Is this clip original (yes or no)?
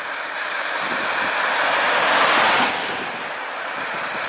yes